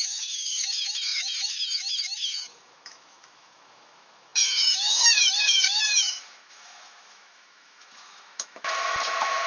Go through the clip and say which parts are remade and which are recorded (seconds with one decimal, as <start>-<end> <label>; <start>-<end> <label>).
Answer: 0.0-9.5 remade